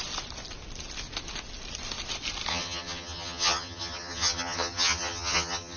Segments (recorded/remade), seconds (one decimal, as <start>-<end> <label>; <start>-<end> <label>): 0.0-2.5 recorded; 2.5-5.8 remade